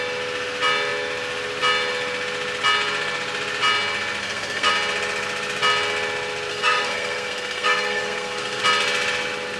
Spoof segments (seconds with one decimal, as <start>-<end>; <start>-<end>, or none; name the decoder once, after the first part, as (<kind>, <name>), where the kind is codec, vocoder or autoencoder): 4.2-4.7 (codec, SNAC); 6.5-8.6